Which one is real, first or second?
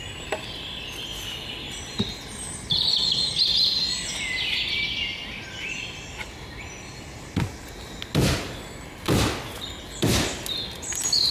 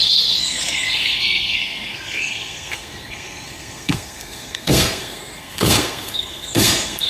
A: first